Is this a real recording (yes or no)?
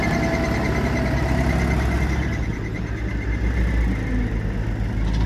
yes